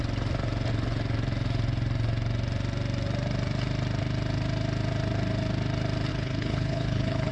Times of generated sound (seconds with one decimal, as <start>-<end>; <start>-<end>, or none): 6.1-7.3